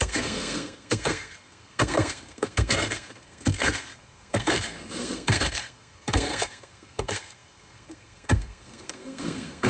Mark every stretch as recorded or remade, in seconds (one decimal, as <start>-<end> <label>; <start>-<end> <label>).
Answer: 0.0-9.7 remade